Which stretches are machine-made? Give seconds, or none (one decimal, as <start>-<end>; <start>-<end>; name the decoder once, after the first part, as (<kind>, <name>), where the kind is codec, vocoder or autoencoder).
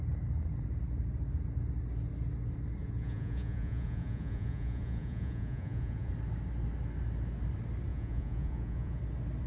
2.8-6.1 (vocoder, Vocos); 7.9-9.0